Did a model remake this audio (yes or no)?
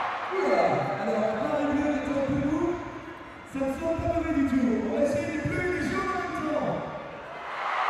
no